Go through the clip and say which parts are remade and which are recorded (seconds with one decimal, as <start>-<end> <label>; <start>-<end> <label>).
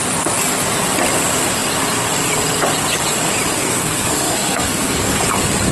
0.0-3.6 recorded; 3.6-5.2 remade; 5.2-5.7 recorded